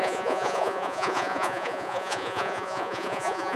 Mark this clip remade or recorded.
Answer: remade